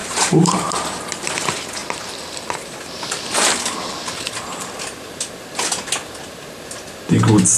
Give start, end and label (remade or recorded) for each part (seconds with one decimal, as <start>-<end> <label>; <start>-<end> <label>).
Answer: 0.0-1.3 remade; 1.3-7.6 recorded

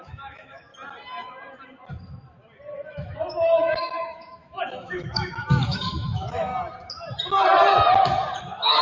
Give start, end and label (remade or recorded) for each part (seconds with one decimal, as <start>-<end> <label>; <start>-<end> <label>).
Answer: 0.0-0.7 remade; 0.7-2.9 recorded; 2.9-6.5 remade; 6.5-8.4 recorded; 8.4-8.8 remade

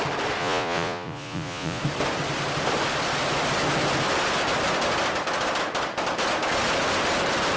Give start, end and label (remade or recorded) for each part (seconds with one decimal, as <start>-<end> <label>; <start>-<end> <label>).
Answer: 0.0-0.4 recorded; 0.4-1.8 remade; 1.8-7.6 recorded

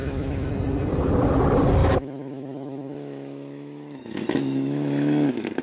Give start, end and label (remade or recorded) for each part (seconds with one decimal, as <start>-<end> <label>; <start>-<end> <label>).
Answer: 0.0-0.5 remade; 0.5-1.8 recorded; 1.8-5.6 remade